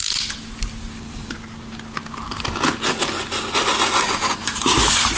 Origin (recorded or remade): recorded